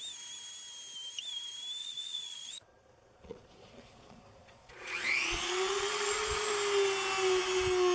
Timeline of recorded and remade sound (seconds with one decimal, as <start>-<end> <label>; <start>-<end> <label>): 0.0-1.8 recorded; 1.8-6.5 remade; 6.5-7.9 recorded